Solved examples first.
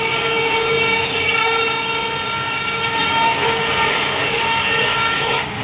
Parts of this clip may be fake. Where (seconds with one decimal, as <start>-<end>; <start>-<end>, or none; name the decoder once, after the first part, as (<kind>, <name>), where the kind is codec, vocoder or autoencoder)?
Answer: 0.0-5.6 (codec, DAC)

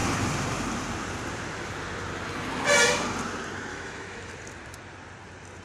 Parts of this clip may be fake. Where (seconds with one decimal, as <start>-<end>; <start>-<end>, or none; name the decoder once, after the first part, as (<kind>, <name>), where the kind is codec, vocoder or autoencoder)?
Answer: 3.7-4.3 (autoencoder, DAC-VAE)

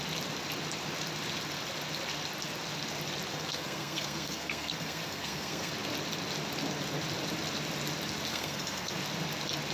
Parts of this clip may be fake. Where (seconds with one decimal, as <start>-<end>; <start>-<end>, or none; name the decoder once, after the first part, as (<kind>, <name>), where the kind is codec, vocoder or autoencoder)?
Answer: 3.3-5.7 (codec, SNAC); 8.3-9.0